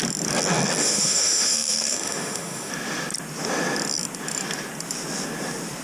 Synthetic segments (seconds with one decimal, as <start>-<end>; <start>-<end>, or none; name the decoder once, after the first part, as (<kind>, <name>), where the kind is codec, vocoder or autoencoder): 0.8-2.7 (autoencoder, DAC-VAE)